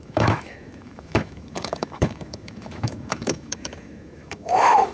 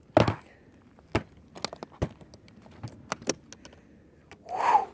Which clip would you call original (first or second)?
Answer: second